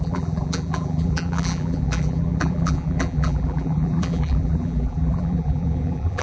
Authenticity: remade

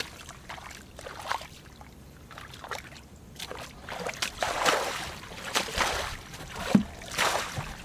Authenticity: remade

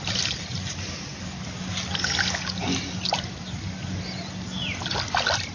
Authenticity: recorded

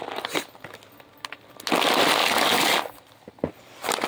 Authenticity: recorded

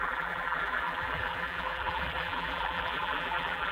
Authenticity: remade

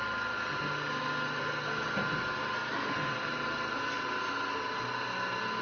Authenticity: recorded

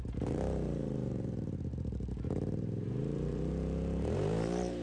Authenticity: remade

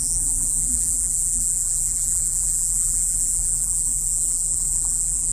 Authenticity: remade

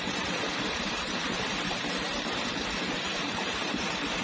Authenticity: remade